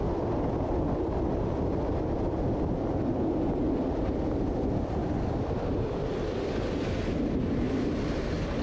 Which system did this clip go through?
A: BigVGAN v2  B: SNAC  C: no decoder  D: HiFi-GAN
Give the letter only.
C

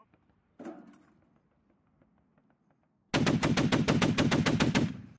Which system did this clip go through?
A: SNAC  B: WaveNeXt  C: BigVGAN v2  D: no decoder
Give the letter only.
D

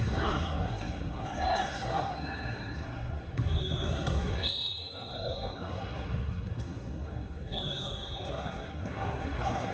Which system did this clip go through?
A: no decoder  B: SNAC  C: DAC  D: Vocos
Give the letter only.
B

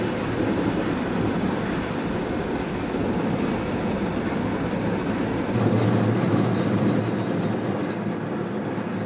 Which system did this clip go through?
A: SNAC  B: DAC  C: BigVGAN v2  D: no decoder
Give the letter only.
D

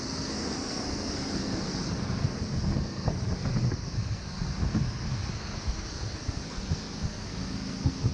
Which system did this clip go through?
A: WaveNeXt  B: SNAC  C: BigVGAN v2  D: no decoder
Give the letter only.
B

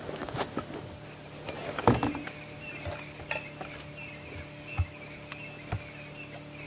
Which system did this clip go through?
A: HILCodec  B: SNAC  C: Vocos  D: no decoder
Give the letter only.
D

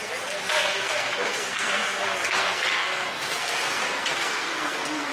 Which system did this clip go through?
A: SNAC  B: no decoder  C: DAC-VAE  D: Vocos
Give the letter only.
A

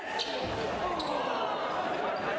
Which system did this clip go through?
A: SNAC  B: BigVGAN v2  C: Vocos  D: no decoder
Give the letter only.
D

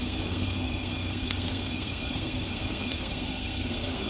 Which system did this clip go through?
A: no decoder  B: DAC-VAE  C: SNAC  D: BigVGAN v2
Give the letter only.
C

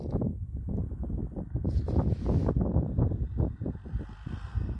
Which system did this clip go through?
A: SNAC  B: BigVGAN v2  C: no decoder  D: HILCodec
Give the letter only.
C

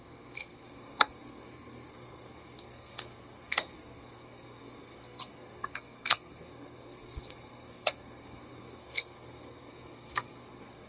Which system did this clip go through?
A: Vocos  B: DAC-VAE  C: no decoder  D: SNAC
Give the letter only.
D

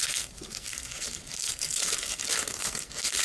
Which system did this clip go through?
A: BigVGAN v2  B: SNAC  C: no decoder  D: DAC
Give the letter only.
B